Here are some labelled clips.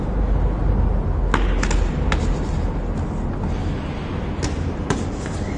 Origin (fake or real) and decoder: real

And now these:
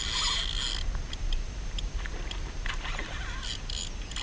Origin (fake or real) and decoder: real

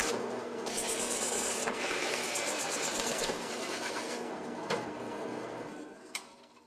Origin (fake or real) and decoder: fake, codec, SNAC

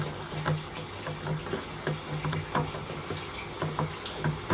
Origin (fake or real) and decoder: real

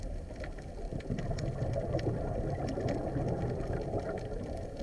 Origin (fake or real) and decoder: real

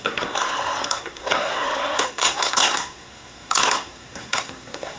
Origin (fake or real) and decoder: fake, codec, SNAC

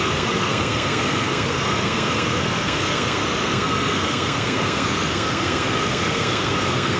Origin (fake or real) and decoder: fake, codec, SNAC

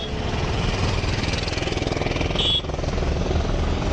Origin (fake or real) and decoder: real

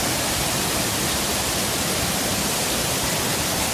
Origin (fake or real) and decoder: real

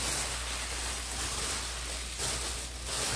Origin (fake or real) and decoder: real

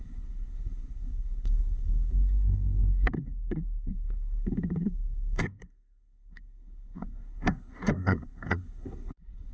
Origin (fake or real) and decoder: fake, codec, SNAC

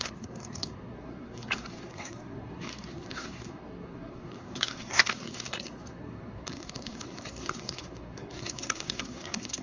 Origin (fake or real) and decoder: fake, codec, SNAC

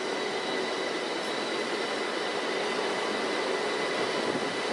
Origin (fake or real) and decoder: real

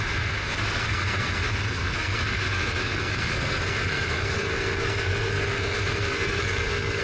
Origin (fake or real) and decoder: fake, codec, SNAC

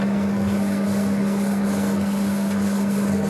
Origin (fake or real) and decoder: fake, codec, SNAC